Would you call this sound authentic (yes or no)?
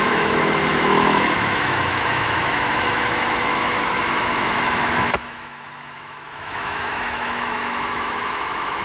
no